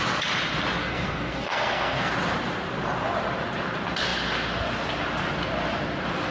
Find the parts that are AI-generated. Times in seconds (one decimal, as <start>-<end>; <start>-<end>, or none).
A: 0.8-2.1